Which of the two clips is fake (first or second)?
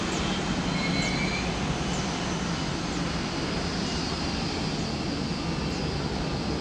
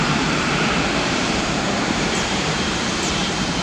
second